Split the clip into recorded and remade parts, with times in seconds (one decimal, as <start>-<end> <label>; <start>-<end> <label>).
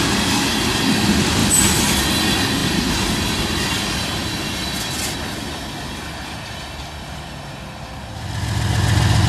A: 0.0-9.3 recorded